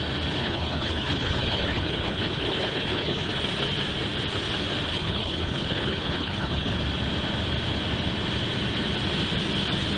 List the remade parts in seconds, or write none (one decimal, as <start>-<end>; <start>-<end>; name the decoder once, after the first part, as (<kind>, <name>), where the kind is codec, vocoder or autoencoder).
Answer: 0.4-3.4 (codec, HILCodec); 4.9-6.7